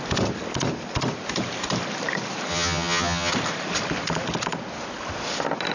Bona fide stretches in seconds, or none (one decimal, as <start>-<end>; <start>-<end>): 0.0-2.5; 3.3-5.7

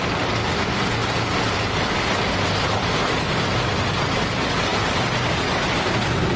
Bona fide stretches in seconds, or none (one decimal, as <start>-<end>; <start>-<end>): 0.0-1.0; 2.3-6.4